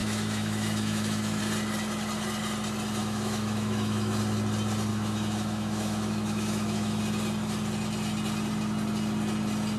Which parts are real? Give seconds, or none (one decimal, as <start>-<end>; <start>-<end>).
1.4-3.0; 4.2-4.9; 7.0-9.8